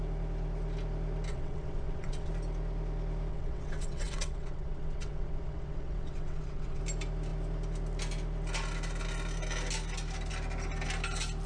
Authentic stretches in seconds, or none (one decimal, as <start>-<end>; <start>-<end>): 0.0-1.3; 2.3-3.3; 6.8-11.5